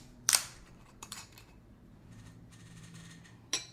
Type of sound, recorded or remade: remade